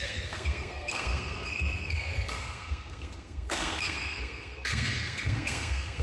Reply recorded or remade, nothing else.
remade